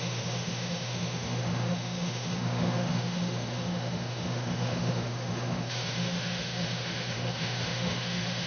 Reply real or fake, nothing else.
fake